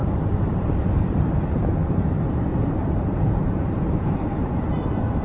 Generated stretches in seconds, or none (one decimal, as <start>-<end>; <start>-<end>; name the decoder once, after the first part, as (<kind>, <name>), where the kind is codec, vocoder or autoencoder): 0.0-1.6 (vocoder, BigVGAN v2); 2.5-5.2